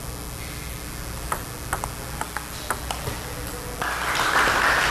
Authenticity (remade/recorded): recorded